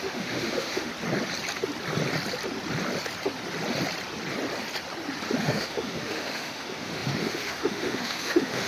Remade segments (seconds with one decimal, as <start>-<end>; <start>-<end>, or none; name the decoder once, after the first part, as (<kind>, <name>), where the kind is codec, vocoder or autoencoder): 0.0-0.9 (autoencoder, DAC-VAE); 5.4-8.7